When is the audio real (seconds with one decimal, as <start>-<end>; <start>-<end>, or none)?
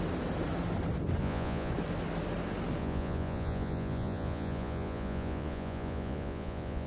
0.0-1.2; 1.7-2.8